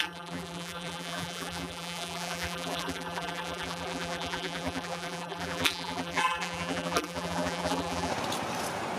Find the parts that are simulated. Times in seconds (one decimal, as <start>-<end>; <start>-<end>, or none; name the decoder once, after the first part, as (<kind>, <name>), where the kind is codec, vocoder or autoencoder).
0.0-8.1 (vocoder, BigVGAN v2)